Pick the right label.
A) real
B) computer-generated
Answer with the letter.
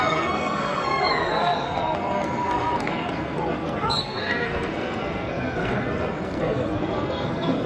B